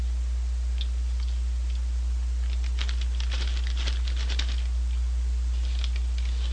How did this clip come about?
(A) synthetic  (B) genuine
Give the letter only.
B